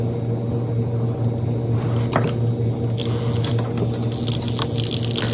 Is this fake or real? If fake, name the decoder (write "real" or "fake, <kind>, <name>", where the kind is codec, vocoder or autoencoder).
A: real